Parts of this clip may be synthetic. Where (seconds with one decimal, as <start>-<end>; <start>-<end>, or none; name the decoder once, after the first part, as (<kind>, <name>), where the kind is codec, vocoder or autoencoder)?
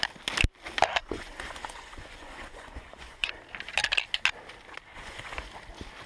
1.0-3.4 (vocoder, Vocos); 4.9-5.5